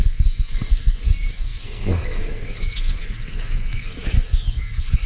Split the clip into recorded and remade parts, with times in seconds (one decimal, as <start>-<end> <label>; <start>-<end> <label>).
0.0-5.1 remade